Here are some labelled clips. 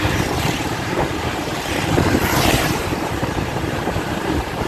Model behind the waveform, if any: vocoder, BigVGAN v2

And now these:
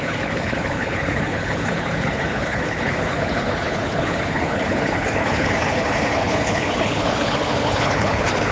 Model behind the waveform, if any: codec, HILCodec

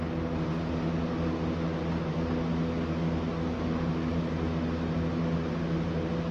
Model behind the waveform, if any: none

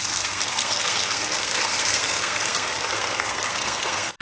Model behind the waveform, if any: codec, SNAC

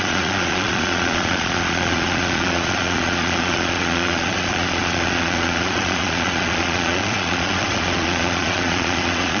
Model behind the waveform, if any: vocoder, Vocos